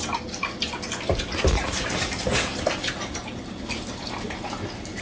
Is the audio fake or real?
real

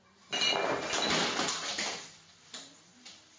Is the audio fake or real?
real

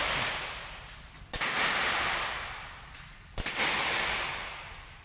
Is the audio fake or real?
real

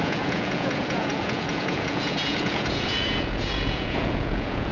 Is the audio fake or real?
fake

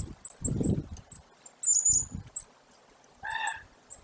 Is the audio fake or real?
real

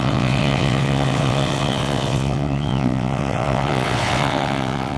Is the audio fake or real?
fake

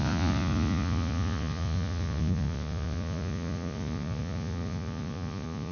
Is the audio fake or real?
fake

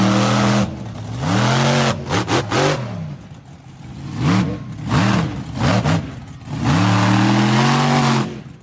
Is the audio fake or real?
real